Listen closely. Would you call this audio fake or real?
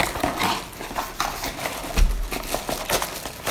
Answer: real